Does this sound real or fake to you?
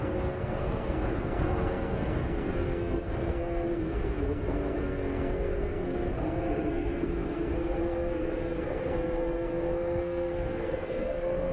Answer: fake